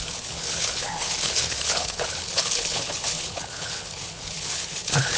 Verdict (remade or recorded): remade